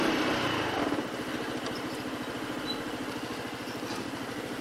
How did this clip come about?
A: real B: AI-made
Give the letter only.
A